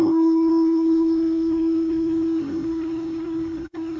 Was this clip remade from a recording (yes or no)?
yes